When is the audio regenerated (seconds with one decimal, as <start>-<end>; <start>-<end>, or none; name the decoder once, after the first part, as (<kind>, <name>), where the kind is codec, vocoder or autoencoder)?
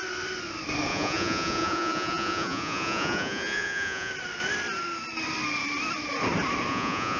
0.9-4.1 (vocoder, Vocos); 6.7-7.2